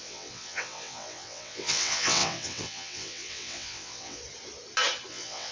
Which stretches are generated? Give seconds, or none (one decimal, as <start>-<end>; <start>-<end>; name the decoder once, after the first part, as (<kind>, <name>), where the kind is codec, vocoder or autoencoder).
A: 0.0-4.2 (vocoder, WaveNeXt); 5.1-5.5